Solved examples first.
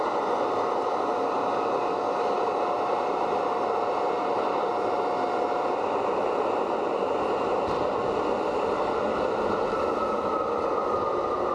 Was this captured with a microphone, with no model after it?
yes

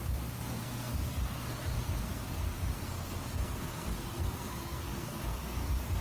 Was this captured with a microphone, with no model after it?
no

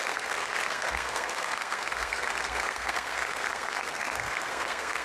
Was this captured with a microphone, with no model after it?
no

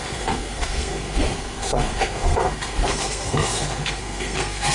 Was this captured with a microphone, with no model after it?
no